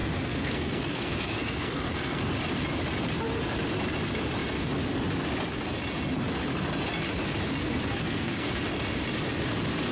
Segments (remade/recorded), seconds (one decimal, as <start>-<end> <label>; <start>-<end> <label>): 0.0-2.2 remade; 2.2-8.0 recorded; 8.0-8.5 remade; 8.5-9.9 recorded